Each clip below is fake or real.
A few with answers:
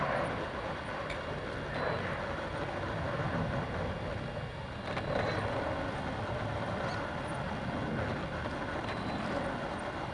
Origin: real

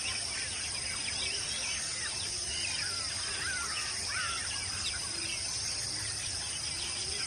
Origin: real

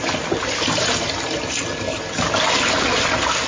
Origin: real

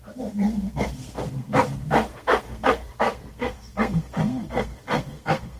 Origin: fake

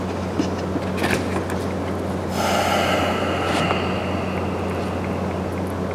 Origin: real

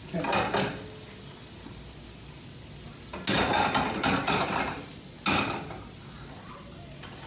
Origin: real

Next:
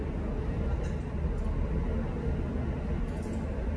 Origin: real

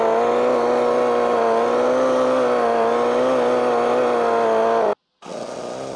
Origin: real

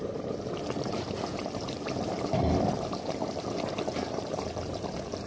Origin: fake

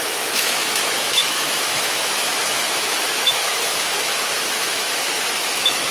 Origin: fake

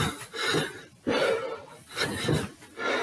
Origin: real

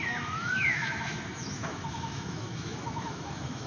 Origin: fake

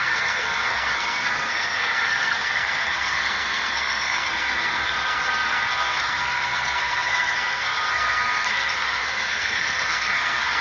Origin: fake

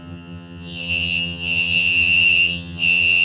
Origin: fake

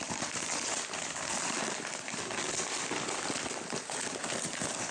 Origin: real